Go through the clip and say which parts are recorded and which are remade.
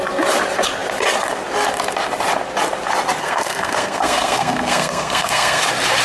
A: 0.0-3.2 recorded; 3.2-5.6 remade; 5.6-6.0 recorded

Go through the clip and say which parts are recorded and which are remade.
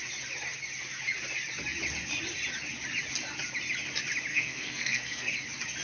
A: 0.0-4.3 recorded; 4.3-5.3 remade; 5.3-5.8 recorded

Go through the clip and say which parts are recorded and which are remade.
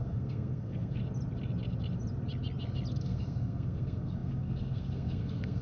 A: 0.0-1.0 remade; 1.0-3.0 recorded; 3.0-5.6 remade